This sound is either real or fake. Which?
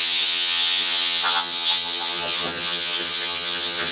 fake